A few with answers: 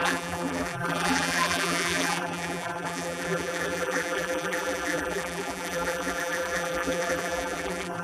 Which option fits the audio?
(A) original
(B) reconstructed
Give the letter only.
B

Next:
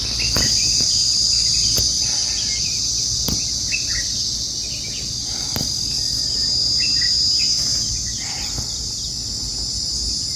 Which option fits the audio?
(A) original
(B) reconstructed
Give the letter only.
A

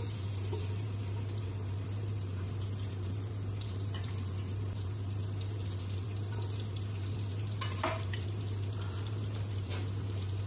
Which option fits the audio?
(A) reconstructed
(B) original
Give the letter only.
A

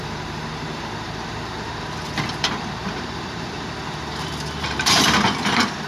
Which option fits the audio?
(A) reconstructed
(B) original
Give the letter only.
A